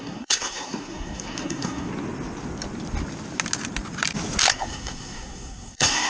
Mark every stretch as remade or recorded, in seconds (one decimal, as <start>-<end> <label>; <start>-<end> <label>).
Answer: 0.0-1.9 remade; 1.9-4.5 recorded; 4.5-6.1 remade